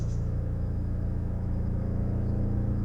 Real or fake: fake